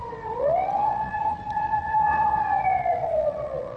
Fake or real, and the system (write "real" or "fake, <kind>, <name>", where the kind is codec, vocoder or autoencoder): fake, vocoder, Vocos